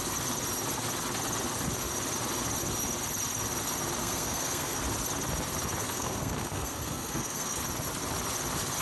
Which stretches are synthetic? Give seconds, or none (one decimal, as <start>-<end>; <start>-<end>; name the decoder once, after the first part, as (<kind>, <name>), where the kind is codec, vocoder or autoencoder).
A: 4.0-4.8 (codec, SNAC); 5.8-7.6